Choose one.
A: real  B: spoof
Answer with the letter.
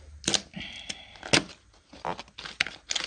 A